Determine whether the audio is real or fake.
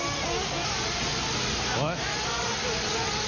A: real